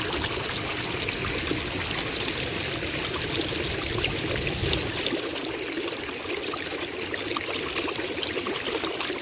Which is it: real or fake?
real